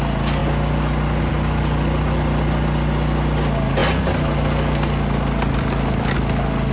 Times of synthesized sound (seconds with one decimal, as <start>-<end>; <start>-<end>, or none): none